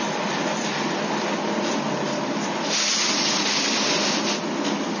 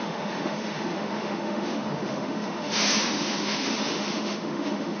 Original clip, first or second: first